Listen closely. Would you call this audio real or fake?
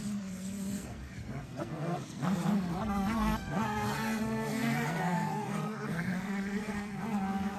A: fake